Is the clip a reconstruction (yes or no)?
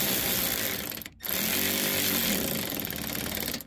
no